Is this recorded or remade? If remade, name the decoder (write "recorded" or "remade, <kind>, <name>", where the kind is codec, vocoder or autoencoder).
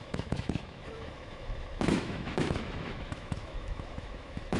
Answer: remade, autoencoder, DAC-VAE